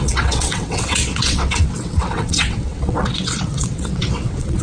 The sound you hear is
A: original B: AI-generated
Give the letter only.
B